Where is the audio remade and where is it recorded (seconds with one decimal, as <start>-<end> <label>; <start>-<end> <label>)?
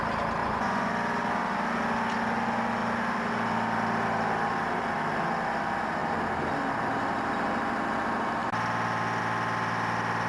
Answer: 0.0-0.4 recorded; 0.4-0.9 remade; 0.9-10.3 recorded